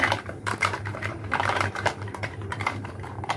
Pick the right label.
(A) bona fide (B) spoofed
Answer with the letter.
B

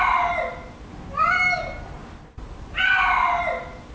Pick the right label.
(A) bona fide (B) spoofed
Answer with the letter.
A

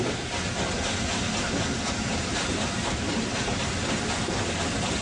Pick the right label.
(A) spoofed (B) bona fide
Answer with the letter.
B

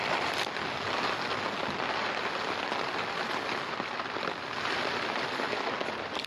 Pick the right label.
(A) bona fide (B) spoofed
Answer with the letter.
A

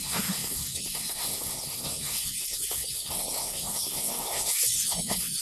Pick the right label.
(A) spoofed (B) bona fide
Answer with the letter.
A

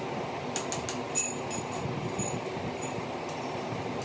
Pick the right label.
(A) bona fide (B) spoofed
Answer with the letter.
A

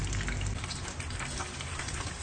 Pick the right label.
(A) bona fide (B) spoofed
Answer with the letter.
A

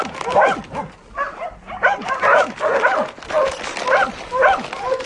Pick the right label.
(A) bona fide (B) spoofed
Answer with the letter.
A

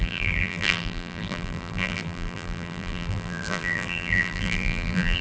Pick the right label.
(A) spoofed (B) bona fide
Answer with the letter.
A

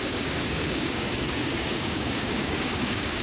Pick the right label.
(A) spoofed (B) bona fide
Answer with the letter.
A